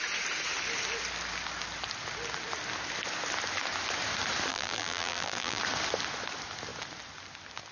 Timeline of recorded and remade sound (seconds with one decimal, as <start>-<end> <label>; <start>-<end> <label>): 0.0-4.5 recorded; 4.5-5.6 remade; 5.6-7.7 recorded